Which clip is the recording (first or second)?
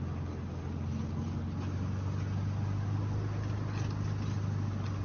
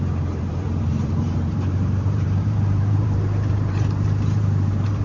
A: first